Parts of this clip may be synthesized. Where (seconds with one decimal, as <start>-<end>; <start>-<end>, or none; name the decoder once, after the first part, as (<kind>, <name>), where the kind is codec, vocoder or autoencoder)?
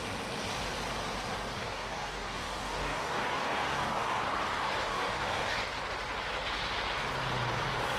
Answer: 1.5-4.2 (codec, DAC); 4.9-5.6